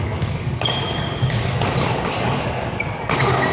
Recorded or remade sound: remade